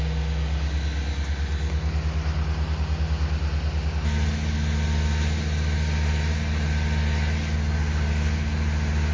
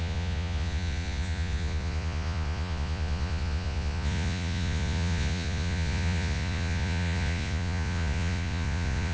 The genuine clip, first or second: first